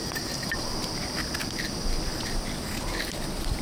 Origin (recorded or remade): recorded